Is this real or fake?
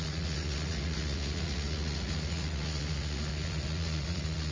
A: fake